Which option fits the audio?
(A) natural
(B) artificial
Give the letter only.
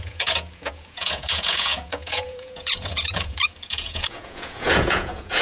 B